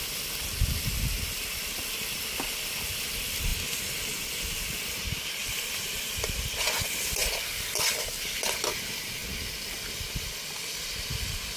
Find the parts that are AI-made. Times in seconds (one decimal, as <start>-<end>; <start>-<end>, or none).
none